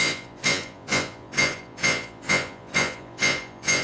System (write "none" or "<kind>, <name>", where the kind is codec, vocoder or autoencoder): vocoder, Vocos